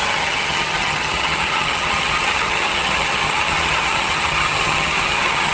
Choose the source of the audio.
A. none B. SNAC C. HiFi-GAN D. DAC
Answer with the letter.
C